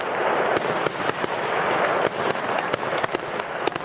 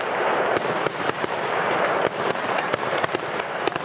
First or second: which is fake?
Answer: second